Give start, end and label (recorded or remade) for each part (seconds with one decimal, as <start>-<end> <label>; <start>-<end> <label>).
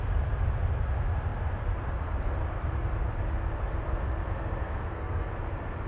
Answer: 0.0-4.6 recorded; 4.6-5.3 remade; 5.3-5.9 recorded